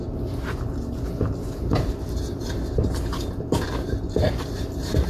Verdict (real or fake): real